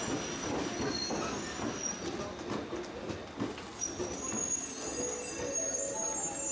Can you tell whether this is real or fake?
real